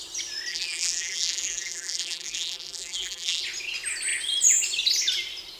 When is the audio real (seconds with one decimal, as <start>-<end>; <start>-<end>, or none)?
0.0-0.5; 3.4-5.6